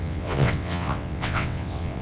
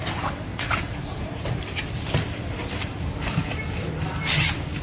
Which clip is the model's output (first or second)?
first